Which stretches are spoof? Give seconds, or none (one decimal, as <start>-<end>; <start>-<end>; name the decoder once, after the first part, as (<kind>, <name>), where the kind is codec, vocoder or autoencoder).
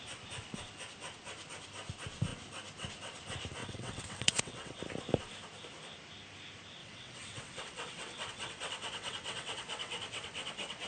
3.6-4.8 (vocoder, WaveNeXt); 6.8-10.9